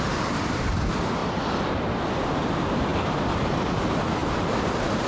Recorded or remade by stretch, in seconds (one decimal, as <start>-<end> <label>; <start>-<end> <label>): 0.0-1.2 recorded; 1.2-1.9 remade; 1.9-5.1 recorded

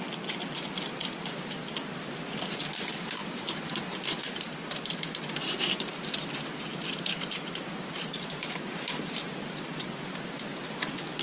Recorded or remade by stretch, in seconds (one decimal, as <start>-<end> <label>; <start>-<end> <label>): 0.0-3.2 recorded; 3.2-5.3 remade; 5.3-6.7 recorded; 6.7-9.2 remade; 9.2-11.2 recorded

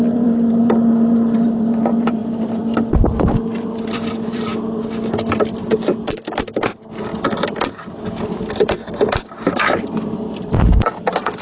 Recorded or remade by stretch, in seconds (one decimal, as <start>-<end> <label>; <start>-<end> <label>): 0.0-4.5 remade; 4.5-5.3 recorded; 5.3-7.1 remade; 7.1-8.5 recorded; 8.5-11.4 remade